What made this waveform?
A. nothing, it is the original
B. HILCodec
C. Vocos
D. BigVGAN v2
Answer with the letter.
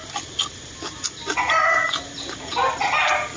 A